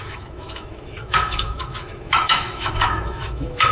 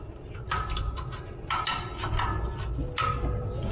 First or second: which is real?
second